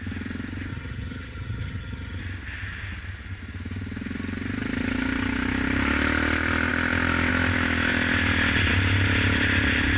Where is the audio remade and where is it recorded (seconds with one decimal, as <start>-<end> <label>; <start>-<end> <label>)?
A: 0.0-0.7 recorded; 0.7-2.2 remade; 2.2-10.0 recorded